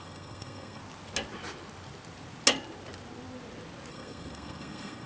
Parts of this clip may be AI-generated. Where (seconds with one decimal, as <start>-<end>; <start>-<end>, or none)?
0.0-0.8; 3.9-5.1